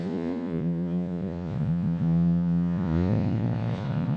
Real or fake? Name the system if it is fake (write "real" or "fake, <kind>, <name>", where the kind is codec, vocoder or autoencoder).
fake, vocoder, Vocos